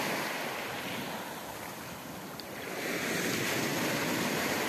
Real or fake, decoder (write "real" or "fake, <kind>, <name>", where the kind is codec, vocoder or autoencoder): real